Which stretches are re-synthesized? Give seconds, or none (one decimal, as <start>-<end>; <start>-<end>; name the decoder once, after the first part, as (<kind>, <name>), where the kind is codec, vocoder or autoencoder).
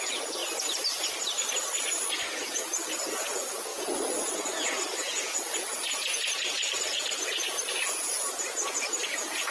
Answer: 0.0-0.4 (vocoder, Vocos); 2.1-9.5